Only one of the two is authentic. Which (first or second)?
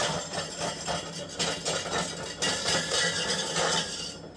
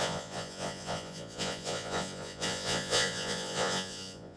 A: first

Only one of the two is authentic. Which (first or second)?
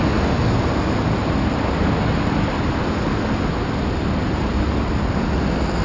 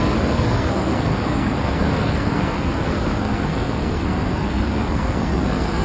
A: first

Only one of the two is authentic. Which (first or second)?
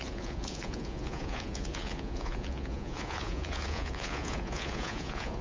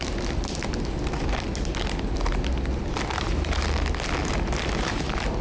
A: second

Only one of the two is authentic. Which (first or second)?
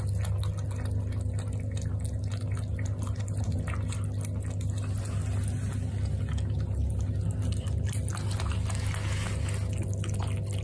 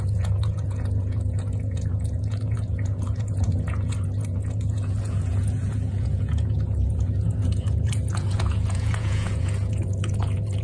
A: first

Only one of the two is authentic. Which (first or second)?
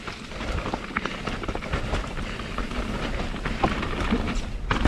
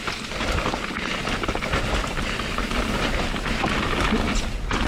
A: second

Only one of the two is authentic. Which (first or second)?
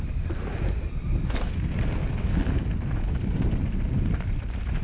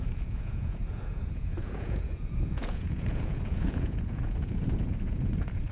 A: first